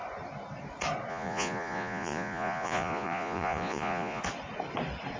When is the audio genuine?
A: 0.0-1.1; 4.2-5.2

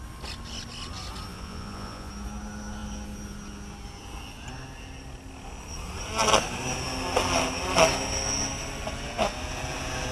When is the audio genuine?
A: 0.0-1.3; 2.1-10.1